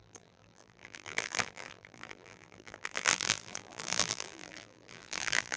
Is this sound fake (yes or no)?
yes